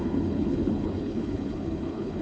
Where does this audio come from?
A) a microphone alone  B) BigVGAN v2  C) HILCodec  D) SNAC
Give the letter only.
C